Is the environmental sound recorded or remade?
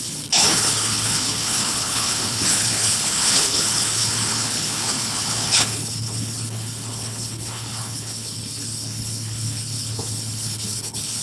remade